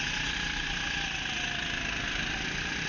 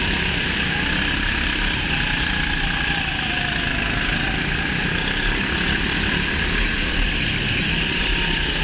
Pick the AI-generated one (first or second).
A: second